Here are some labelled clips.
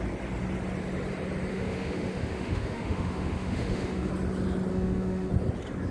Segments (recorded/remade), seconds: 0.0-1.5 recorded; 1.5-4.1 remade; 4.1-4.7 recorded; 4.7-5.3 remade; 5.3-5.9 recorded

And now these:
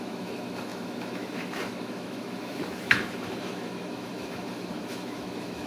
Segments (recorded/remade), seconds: 0.0-5.7 remade

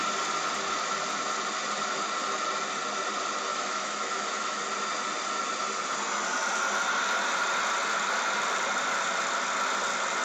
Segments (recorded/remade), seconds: 0.0-3.5 recorded; 3.5-4.6 remade; 4.6-10.2 recorded